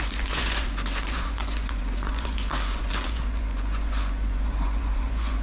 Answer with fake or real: fake